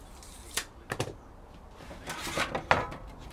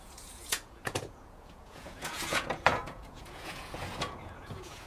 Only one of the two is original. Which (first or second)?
first